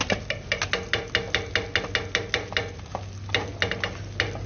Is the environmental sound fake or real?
real